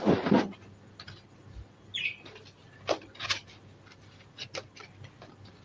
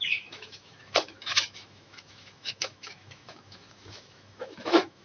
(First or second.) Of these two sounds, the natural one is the first